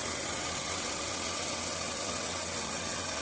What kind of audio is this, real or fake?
fake